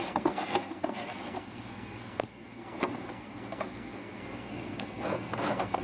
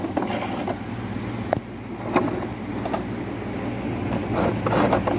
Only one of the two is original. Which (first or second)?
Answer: second